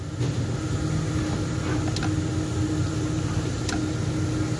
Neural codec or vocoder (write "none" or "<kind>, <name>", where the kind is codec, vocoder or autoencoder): none